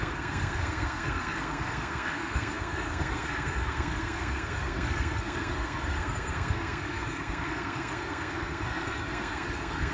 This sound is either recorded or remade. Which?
remade